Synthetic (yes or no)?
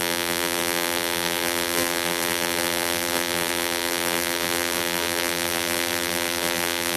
yes